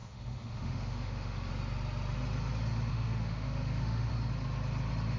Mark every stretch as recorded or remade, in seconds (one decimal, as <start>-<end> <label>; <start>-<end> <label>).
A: 0.0-1.5 remade; 1.5-2.9 recorded; 2.9-4.1 remade; 4.1-5.2 recorded